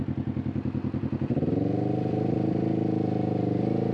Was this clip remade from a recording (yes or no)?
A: no